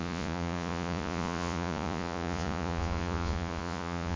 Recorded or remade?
remade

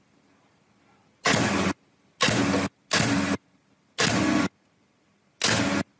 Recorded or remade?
recorded